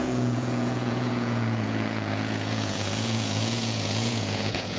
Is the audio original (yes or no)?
no